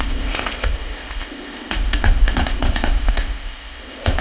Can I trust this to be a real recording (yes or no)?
no